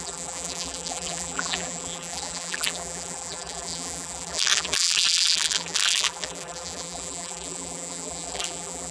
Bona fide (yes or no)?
no